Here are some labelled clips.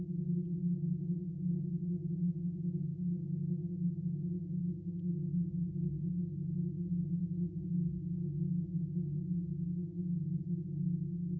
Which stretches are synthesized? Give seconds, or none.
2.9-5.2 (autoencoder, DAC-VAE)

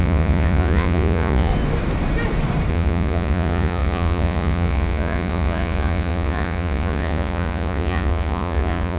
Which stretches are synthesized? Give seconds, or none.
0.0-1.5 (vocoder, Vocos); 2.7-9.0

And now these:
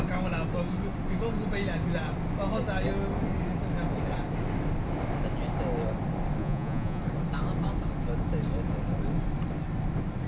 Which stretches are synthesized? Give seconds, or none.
6.4-7.0 (vocoder, Vocos)